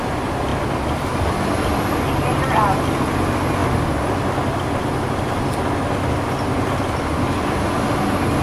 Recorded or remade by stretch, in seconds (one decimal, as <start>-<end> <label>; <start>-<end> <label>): 0.0-8.4 recorded